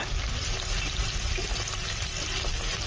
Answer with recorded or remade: recorded